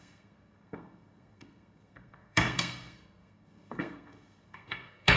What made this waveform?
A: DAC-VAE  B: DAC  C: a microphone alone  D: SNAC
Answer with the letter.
D